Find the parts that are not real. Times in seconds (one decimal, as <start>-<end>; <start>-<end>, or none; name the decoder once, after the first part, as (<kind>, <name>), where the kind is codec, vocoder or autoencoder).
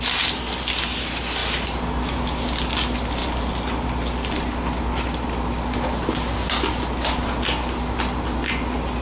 none